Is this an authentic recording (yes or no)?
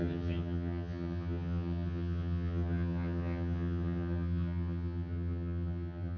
no